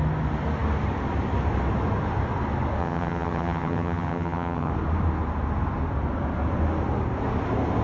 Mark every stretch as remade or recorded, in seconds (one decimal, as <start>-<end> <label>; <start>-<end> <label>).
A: 0.0-2.8 recorded; 2.8-4.7 remade; 4.7-7.8 recorded